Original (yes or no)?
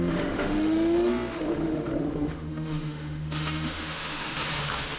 no